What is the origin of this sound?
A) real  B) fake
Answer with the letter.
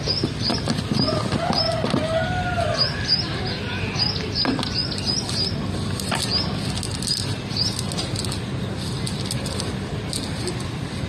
A